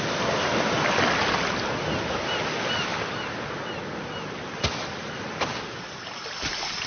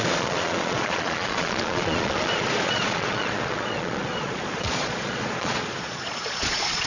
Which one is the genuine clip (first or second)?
first